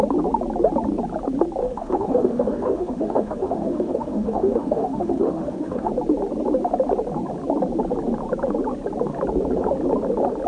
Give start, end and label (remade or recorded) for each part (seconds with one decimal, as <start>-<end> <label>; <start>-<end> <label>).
0.0-1.6 recorded; 1.6-5.9 remade; 5.9-10.5 recorded